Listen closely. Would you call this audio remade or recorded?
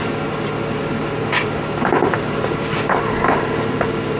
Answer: recorded